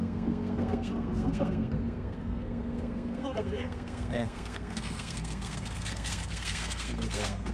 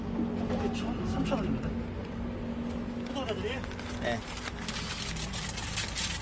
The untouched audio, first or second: second